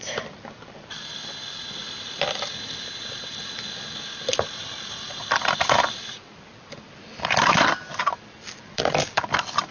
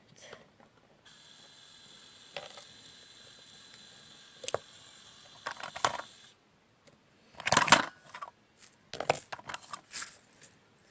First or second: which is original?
second